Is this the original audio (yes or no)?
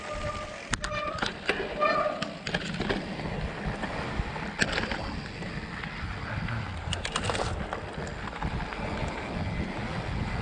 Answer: yes